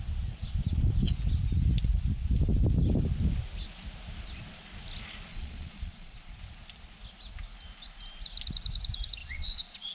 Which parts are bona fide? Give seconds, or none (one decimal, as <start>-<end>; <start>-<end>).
0.0-5.3; 6.4-9.2